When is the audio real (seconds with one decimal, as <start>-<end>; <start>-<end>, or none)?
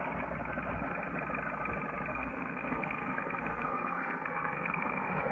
0.0-2.1